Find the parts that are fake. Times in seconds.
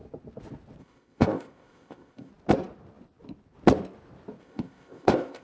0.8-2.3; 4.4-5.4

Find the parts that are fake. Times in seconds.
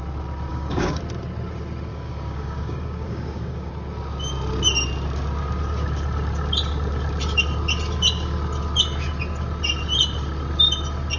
0.5-1.0; 1.9-3.7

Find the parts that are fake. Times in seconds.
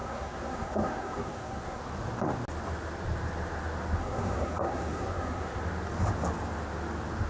0.0-1.8; 4.0-5.6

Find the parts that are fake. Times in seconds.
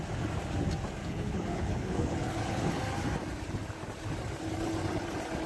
1.0-2.8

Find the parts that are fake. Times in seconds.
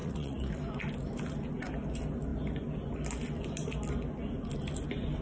0.0-0.5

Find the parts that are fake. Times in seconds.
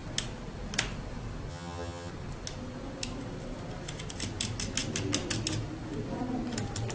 1.5-2.1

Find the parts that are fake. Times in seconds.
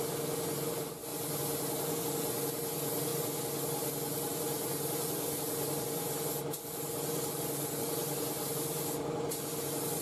none